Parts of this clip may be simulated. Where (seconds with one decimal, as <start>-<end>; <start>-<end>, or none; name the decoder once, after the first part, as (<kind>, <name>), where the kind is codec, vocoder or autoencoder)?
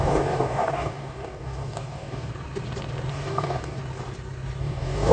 0.0-2.3 (codec, DAC); 3.1-3.8; 4.6-5.1